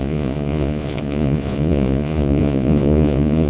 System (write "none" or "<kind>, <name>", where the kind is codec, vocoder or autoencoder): vocoder, Vocos